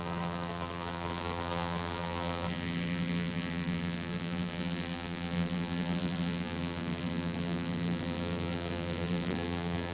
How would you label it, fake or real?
fake